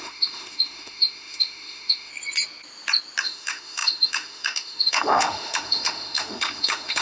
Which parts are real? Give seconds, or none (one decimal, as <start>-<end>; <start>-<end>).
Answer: 2.1-3.2